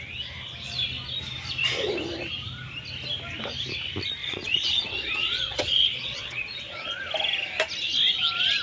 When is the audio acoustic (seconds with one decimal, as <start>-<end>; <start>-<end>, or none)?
0.0-4.2; 7.0-8.6